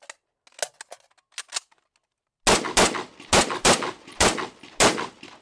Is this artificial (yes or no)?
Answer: no